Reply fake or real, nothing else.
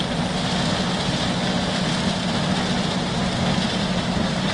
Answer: real